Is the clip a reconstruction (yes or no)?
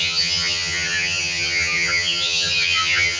yes